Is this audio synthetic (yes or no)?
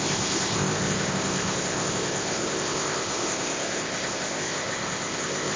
yes